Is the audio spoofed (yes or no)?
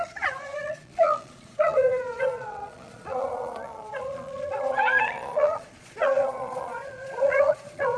yes